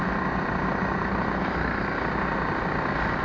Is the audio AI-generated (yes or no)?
no